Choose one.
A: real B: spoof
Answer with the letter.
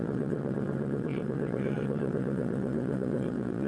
B